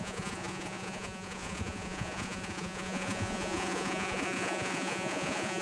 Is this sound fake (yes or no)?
yes